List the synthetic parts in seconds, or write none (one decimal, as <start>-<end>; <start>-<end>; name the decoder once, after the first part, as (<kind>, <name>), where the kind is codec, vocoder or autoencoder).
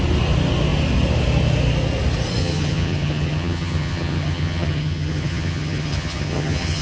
2.4-6.8 (vocoder, HiFi-GAN)